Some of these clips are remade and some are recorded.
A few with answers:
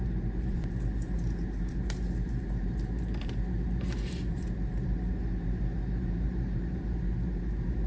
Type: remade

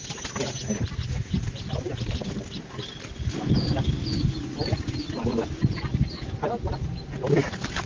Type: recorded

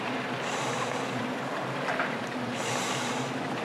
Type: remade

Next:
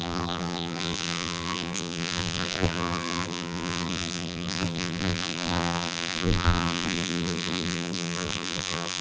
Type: remade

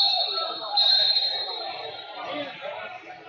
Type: remade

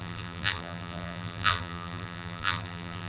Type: remade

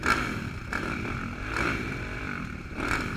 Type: remade